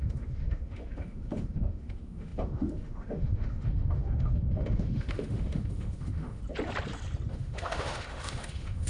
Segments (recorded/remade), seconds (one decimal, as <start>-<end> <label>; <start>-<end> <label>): 0.0-6.4 remade; 6.4-7.3 recorded; 7.3-8.9 remade